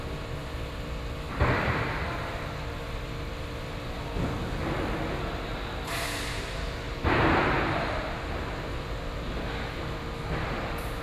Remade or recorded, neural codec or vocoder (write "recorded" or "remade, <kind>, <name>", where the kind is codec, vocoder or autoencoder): recorded